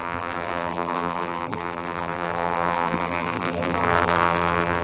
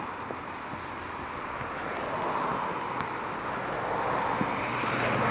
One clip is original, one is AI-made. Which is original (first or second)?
second